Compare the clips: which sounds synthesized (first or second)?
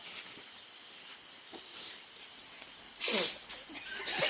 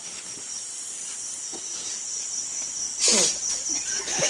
first